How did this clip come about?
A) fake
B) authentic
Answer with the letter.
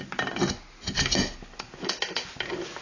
B